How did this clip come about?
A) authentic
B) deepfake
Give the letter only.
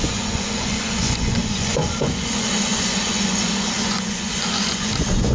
B